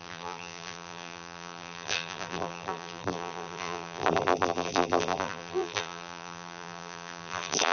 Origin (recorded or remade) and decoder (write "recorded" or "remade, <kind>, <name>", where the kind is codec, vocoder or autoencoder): remade, vocoder, BigVGAN v2